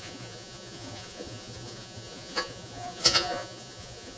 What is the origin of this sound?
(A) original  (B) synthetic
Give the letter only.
B